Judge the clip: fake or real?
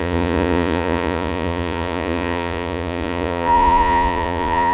fake